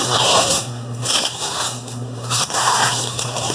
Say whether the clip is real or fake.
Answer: fake